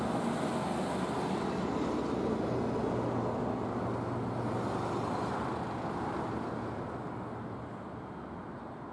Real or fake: real